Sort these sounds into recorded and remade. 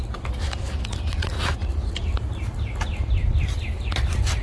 recorded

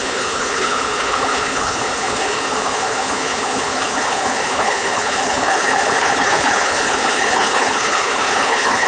remade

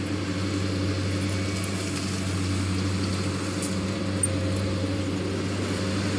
recorded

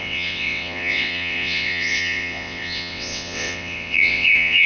remade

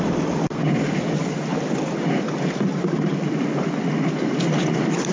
recorded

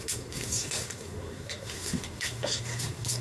remade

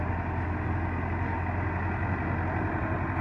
recorded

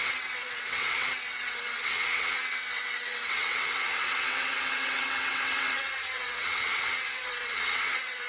remade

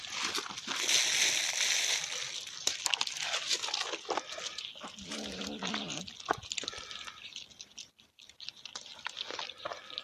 recorded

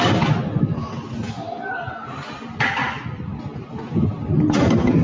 recorded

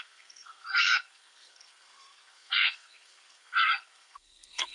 remade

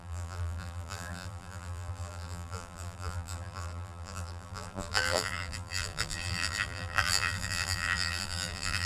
remade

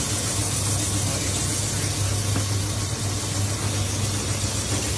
recorded